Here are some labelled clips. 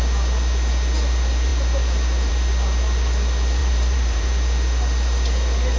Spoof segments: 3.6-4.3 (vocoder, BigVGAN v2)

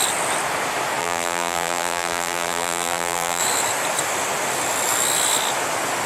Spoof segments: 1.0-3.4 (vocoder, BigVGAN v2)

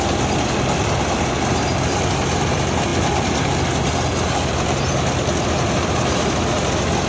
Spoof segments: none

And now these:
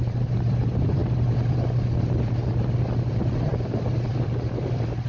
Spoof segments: 0.0-1.0 (vocoder, BigVGAN v2); 2.6-3.5; 4.1-5.1

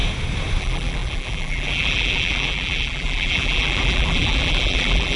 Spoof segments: 0.6-5.2 (vocoder, BigVGAN v2)

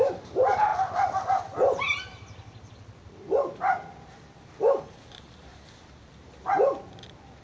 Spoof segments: 0.0-0.7 (vocoder, BigVGAN v2); 5.1-5.5